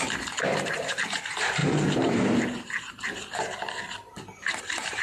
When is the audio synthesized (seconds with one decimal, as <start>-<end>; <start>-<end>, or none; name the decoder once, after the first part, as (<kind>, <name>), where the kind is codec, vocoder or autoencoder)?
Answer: 0.0-5.0 (vocoder, BigVGAN v2)